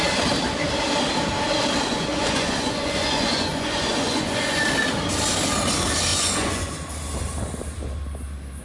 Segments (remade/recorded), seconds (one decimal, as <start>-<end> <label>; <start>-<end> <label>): 0.0-1.9 recorded; 1.9-4.6 remade; 4.6-6.1 recorded; 6.1-6.7 remade; 6.7-8.6 recorded